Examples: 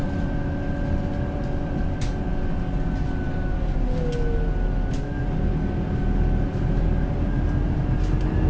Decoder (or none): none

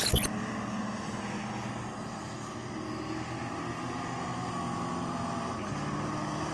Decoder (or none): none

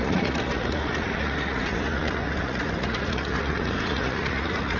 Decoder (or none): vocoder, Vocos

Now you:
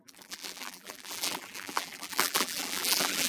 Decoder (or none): vocoder, BigVGAN v2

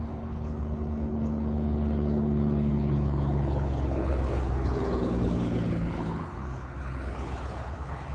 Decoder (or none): codec, HILCodec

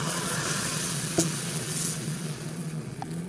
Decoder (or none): vocoder, Vocos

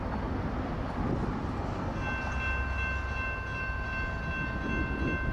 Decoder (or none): none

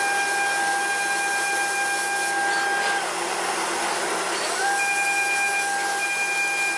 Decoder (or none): none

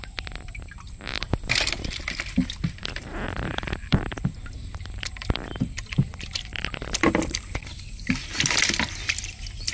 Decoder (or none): vocoder, BigVGAN v2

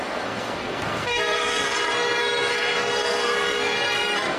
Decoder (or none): codec, SNAC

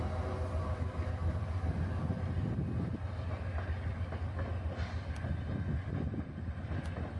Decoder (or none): none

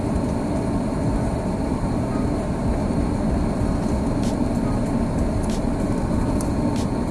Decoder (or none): none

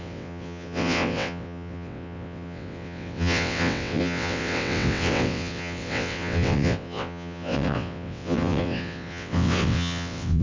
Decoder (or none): vocoder, WaveNeXt